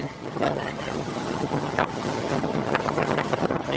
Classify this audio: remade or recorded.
remade